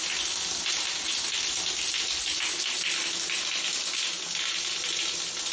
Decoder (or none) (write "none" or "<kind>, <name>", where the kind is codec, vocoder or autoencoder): none